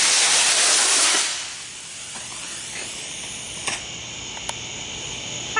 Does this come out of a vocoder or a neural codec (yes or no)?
no